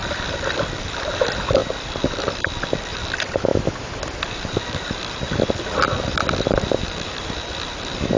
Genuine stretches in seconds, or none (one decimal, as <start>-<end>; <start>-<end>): 0.0-0.6; 1.6-2.9; 3.5-8.2